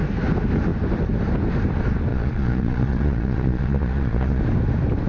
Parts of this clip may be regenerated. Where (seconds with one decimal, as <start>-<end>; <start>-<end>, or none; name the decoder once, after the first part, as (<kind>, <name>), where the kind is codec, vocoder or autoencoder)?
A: 2.1-4.4 (vocoder, Vocos)